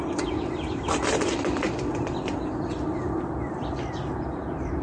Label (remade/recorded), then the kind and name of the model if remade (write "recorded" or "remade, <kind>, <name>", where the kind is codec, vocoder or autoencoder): remade, vocoder, BigVGAN v2